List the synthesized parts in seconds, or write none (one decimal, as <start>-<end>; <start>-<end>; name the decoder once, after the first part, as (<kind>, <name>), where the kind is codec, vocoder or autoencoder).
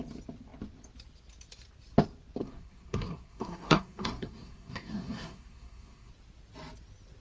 2.4-6.1 (codec, SNAC)